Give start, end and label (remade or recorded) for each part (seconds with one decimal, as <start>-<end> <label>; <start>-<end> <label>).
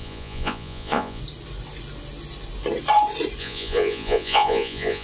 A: 0.0-1.2 remade; 1.2-3.4 recorded; 3.4-5.0 remade